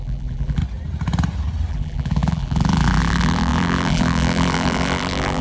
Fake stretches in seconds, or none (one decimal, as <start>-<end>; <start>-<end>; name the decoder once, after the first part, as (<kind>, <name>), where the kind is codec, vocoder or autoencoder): 0.0-0.6 (vocoder, BigVGAN v2); 1.7-5.4